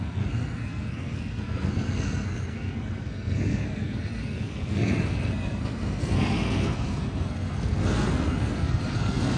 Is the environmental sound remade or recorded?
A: remade